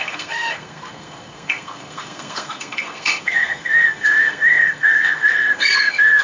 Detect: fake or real fake